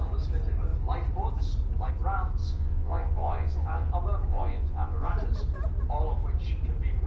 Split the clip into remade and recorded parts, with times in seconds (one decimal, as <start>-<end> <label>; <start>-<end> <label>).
0.0-2.4 recorded; 2.4-3.9 remade; 3.9-4.3 recorded; 4.3-5.1 remade; 5.1-7.1 recorded